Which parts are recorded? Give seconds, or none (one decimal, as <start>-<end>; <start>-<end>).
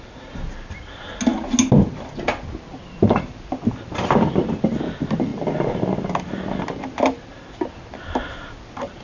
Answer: 0.0-9.0